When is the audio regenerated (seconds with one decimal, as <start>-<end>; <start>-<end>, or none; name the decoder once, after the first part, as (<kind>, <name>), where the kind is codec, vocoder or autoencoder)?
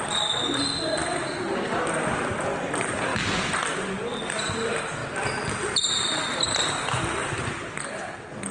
7.2-8.1 (vocoder, BigVGAN v2)